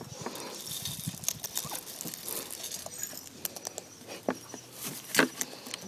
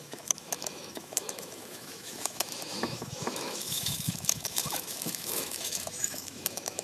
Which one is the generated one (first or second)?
second